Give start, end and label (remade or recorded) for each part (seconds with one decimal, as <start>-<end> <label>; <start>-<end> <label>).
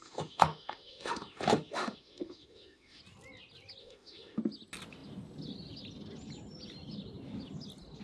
0.0-3.0 remade; 3.0-3.8 recorded; 3.8-4.4 remade; 4.4-8.0 recorded